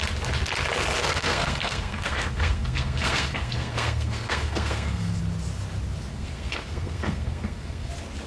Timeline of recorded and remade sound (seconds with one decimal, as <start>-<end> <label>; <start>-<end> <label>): 0.0-1.0 recorded; 1.0-5.2 remade; 5.2-6.1 recorded; 6.1-7.9 remade; 7.9-8.3 recorded